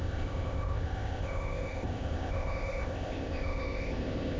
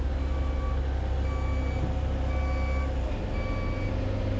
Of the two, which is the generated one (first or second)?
first